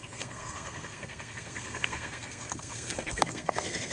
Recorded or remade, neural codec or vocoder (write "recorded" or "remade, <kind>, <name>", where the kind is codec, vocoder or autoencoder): remade, codec, SNAC